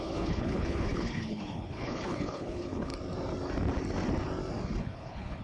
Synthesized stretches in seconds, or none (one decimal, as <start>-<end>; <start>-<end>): 0.0-2.9; 4.8-5.4